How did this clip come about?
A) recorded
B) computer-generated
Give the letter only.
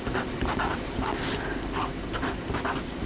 A